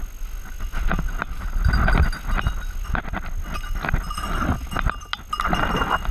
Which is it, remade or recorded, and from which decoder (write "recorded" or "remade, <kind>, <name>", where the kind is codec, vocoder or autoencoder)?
recorded